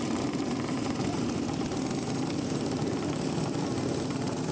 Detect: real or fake real